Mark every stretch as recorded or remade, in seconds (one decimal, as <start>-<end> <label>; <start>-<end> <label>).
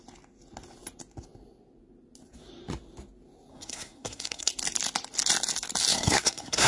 0.0-3.5 recorded; 3.5-4.5 remade; 4.5-5.9 recorded; 5.9-6.7 remade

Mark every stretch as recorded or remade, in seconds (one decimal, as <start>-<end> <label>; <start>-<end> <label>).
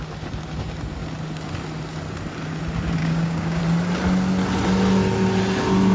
0.0-3.0 recorded; 3.0-3.6 remade; 3.6-5.9 recorded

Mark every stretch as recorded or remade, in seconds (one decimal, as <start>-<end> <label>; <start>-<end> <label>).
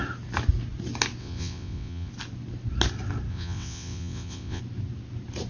0.0-1.2 recorded; 1.2-2.1 remade; 2.1-3.3 recorded; 3.3-4.6 remade; 4.6-5.5 recorded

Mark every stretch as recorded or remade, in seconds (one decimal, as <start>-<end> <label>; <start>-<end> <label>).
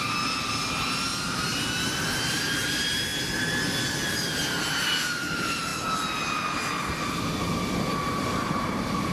0.0-3.1 remade; 3.1-4.1 recorded; 4.1-5.7 remade; 5.7-8.2 recorded; 8.2-9.1 remade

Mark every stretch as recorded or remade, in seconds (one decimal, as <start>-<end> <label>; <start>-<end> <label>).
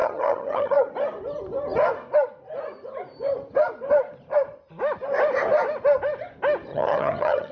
0.0-0.9 remade; 0.9-6.7 recorded; 6.7-7.5 remade